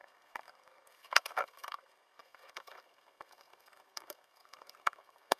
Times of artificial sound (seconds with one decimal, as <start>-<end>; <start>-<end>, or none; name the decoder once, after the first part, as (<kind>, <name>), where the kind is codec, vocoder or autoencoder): 0.0-5.4 (codec, SNAC)